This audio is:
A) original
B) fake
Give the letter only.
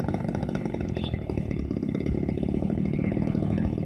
B